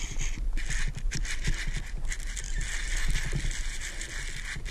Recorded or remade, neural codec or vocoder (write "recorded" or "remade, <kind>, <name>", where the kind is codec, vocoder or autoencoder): recorded